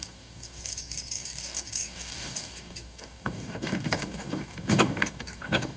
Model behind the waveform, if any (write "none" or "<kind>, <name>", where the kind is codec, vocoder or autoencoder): codec, DAC